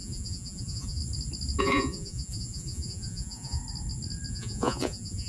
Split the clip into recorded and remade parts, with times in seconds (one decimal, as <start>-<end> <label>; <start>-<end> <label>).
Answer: 0.0-1.0 remade; 1.0-1.6 recorded; 1.6-3.6 remade; 3.6-4.3 recorded; 4.3-5.3 remade